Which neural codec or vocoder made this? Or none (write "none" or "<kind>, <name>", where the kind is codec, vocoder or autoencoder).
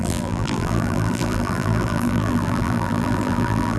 vocoder, BigVGAN v2